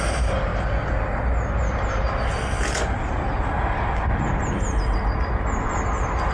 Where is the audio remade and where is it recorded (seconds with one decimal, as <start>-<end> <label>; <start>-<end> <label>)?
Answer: 0.0-6.3 recorded